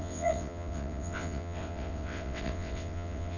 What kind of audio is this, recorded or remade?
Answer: remade